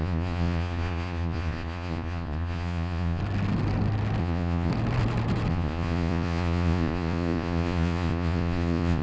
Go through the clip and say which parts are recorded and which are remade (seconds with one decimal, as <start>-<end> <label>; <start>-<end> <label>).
0.0-3.2 remade; 3.2-4.2 recorded; 4.2-4.7 remade; 4.7-5.5 recorded; 5.5-9.0 remade